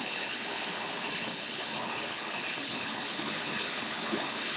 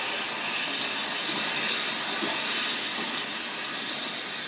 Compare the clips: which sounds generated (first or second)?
first